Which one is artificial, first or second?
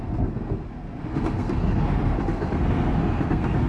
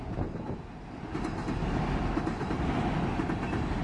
first